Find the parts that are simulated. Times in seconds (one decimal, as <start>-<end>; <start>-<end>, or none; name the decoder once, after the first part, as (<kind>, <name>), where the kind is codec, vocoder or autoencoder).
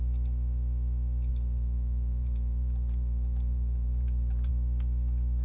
1.3-4.5 (vocoder, BigVGAN v2)